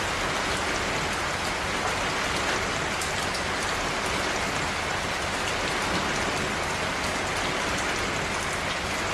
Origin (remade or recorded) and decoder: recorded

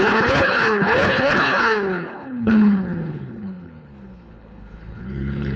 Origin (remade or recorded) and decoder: remade, codec, HILCodec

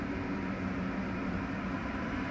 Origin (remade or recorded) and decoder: recorded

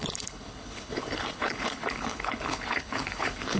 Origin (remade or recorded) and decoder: remade, codec, HILCodec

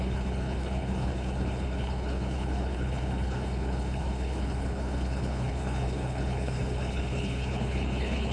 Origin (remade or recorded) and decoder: remade, codec, HILCodec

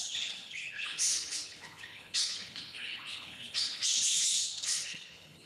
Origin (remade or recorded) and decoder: remade, codec, HILCodec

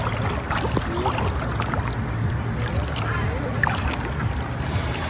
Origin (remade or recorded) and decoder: recorded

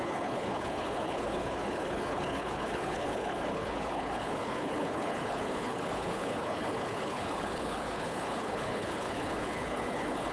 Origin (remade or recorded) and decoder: remade, codec, HILCodec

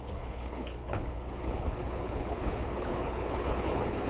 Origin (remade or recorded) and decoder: remade, codec, HILCodec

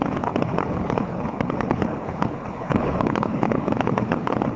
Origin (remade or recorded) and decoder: remade, codec, HILCodec